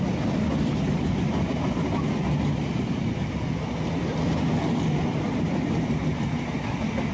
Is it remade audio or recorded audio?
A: recorded